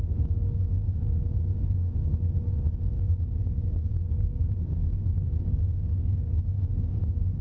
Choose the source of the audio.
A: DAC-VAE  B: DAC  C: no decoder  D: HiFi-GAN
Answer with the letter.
B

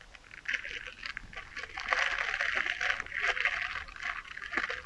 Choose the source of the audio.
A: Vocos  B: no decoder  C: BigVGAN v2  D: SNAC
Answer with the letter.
B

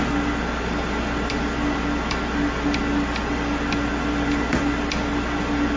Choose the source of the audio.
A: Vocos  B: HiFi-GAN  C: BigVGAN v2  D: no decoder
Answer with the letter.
D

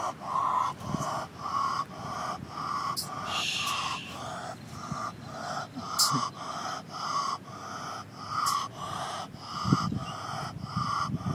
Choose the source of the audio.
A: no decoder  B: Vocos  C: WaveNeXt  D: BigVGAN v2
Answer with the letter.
A